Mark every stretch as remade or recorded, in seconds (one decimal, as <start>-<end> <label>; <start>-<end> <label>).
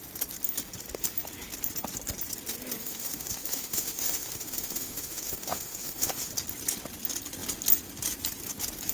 0.0-2.8 recorded; 2.8-6.3 remade; 6.3-8.9 recorded